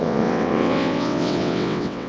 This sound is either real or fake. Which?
fake